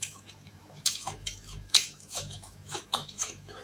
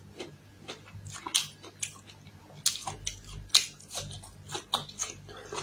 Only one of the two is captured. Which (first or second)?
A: second